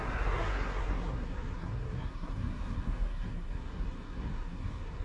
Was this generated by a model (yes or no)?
yes